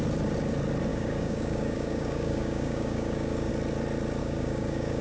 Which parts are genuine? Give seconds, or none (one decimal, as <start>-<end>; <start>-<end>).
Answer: 0.0-0.9; 3.5-4.2